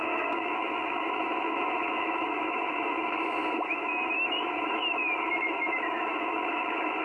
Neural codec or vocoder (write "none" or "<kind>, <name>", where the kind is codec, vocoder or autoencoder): autoencoder, DAC-VAE